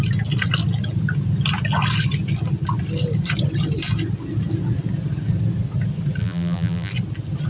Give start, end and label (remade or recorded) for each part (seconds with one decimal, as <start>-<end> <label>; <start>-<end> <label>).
0.0-6.2 recorded; 6.2-6.9 remade; 6.9-7.5 recorded